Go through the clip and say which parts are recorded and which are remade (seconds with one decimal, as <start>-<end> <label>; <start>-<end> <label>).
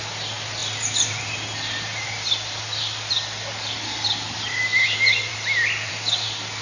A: 0.0-6.6 recorded